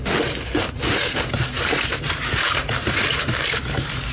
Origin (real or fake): fake